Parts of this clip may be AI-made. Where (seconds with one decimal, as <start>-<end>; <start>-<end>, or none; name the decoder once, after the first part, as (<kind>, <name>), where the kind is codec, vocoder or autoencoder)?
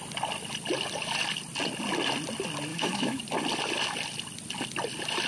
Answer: 2.7-3.2 (autoencoder, DAC-VAE)